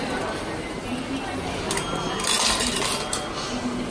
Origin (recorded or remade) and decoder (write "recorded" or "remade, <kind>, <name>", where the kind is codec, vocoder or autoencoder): recorded